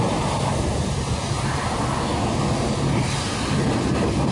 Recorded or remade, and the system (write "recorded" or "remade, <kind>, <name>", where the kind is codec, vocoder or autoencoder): recorded